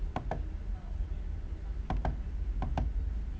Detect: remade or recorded recorded